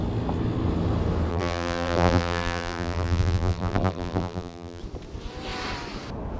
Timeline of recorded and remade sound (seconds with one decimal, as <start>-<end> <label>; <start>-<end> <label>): 0.0-1.3 recorded; 1.3-4.8 remade; 4.8-6.4 recorded